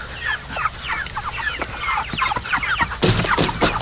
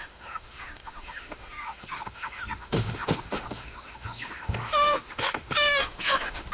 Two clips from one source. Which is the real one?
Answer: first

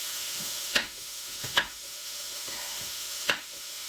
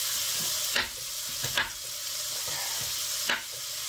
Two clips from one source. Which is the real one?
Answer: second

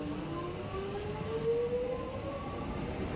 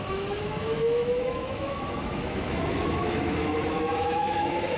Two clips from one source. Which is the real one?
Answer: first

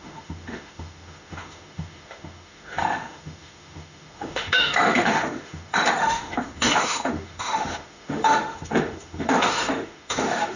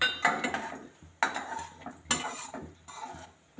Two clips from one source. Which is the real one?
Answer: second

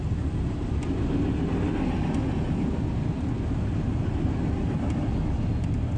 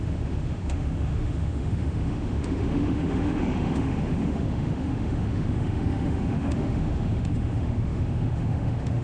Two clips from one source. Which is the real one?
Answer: first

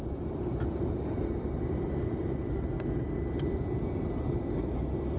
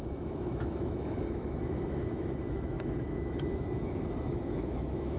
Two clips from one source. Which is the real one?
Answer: first